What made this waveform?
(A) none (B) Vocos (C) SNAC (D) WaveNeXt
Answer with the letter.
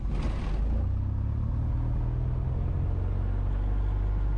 A